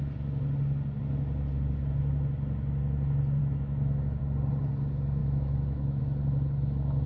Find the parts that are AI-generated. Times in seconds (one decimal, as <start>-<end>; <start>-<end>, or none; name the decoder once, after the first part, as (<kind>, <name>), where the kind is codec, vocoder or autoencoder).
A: 3.4-4.2 (autoencoder, DAC-VAE); 5.2-6.0